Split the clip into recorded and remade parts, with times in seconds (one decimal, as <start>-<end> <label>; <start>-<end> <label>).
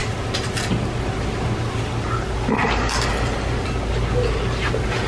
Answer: 0.0-3.1 remade; 3.1-5.1 recorded